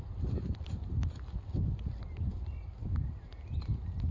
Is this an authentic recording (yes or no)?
yes